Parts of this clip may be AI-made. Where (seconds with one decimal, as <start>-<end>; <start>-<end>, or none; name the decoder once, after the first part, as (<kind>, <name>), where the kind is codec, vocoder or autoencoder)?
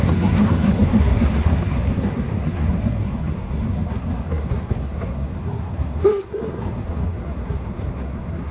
0.0-8.5 (codec, SNAC)